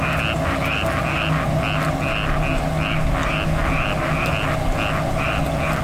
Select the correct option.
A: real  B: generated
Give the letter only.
A